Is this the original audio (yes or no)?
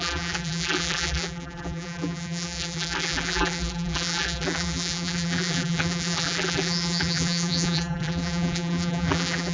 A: no